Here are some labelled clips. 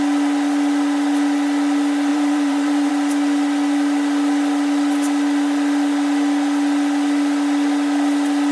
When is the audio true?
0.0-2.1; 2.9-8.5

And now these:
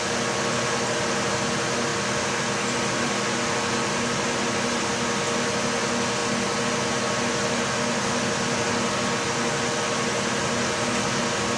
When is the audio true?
0.0-11.6

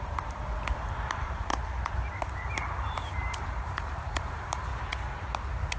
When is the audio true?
0.4-1.1; 1.5-2.2; 4.7-5.8